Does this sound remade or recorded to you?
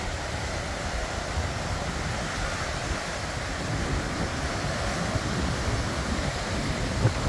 recorded